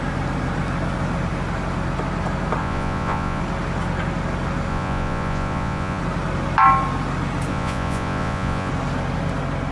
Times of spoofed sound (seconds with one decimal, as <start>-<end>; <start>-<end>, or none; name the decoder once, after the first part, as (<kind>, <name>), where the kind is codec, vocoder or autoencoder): 2.6-3.4 (vocoder, Vocos); 4.7-6.0; 7.5-8.7